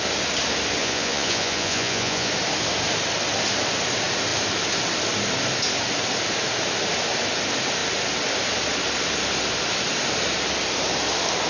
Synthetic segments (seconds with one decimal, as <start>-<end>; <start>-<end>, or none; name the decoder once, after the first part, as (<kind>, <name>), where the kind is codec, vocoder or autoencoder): 0.8-2.3 (vocoder, Vocos)